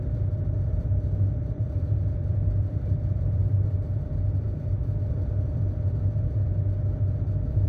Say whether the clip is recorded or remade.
remade